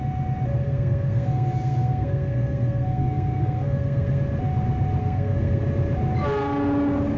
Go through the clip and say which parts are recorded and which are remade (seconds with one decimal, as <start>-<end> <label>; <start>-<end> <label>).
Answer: 0.0-0.6 recorded; 0.6-4.2 remade; 4.2-5.0 recorded; 5.0-5.6 remade; 5.6-7.2 recorded